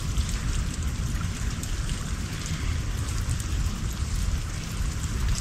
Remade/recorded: recorded